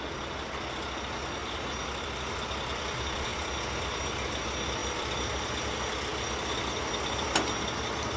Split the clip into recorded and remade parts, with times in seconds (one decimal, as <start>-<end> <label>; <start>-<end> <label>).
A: 0.0-1.4 recorded; 1.4-2.2 remade; 2.2-4.8 recorded; 4.8-5.6 remade; 5.6-8.2 recorded